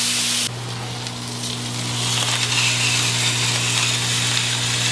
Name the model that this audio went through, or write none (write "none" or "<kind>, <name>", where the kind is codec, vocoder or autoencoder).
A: none